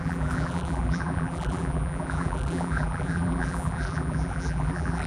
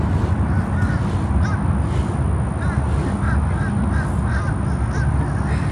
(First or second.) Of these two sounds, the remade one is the first